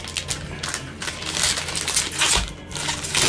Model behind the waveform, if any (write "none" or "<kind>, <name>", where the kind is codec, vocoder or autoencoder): none